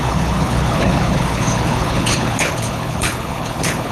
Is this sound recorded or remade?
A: remade